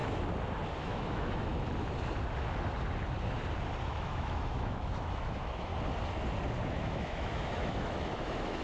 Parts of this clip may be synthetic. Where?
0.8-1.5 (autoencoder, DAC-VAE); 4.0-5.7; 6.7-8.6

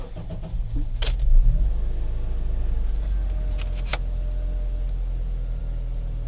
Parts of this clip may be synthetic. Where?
none

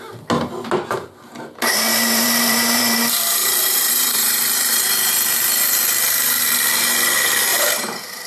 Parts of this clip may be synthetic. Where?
1.9-4.8 (vocoder, BigVGAN v2); 7.5-8.3

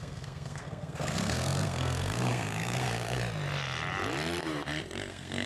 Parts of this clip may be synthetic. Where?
0.0-3.2 (codec, SNAC); 5.1-5.5

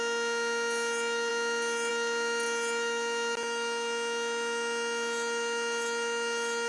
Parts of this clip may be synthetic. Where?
none

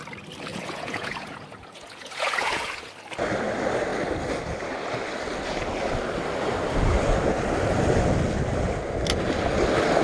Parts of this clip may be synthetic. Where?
0.5-2.9 (vocoder, Vocos)

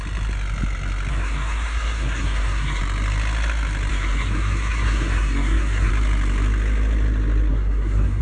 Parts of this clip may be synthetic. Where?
1.1-2.8 (codec, SNAC); 3.9-5.9; 7.5-8.2